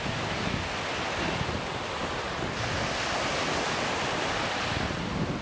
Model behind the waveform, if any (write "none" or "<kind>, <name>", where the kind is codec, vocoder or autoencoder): none